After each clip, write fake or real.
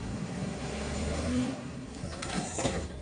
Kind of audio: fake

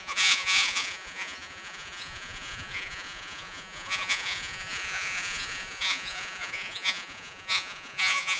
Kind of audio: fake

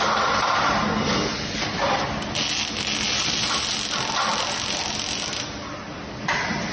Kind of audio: real